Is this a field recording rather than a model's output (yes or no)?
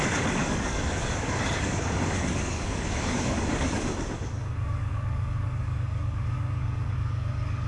no